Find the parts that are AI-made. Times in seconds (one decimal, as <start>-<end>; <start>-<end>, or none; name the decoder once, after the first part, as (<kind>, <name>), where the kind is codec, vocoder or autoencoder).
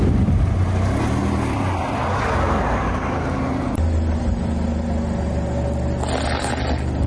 none